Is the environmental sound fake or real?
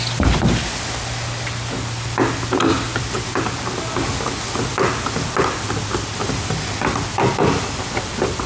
real